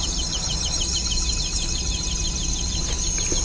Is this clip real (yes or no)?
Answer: no